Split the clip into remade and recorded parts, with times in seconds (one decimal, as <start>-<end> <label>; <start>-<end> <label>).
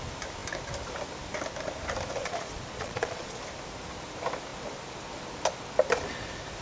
0.0-2.2 recorded; 2.2-3.4 remade; 3.4-6.6 recorded